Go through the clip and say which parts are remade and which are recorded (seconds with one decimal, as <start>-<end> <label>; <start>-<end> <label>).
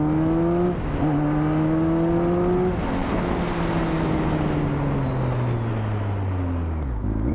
0.0-7.3 recorded